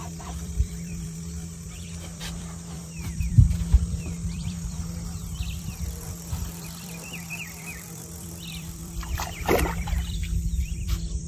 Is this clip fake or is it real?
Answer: fake